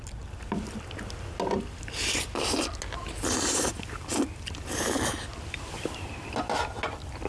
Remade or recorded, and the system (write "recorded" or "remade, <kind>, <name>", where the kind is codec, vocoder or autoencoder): recorded